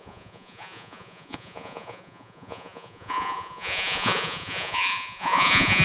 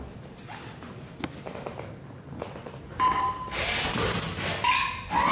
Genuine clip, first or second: second